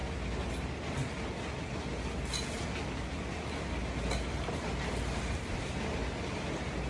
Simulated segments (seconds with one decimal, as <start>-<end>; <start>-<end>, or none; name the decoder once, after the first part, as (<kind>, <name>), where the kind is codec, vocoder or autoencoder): none